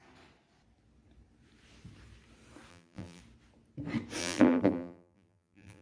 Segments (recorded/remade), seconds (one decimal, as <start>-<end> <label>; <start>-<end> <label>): 0.0-2.7 recorded; 2.7-3.2 remade; 3.2-4.2 recorded; 4.2-5.8 remade